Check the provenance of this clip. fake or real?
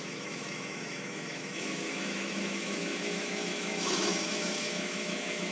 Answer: fake